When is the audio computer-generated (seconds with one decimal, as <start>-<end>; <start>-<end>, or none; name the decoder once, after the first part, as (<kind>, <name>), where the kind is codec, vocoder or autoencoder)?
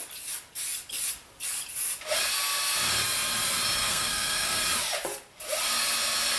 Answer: 3.8-4.6 (codec, SNAC)